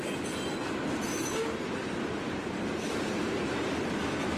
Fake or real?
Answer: real